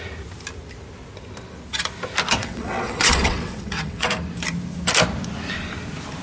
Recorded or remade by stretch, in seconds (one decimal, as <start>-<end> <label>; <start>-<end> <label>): 0.0-2.4 recorded; 2.4-4.1 remade; 4.1-6.2 recorded